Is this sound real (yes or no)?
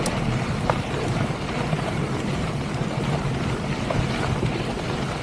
no